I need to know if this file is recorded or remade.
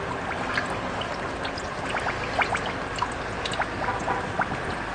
recorded